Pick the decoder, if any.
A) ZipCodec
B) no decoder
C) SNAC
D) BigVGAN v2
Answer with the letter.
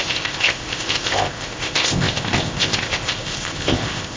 A